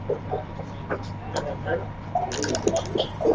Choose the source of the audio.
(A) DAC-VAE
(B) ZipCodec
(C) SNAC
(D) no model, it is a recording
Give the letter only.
D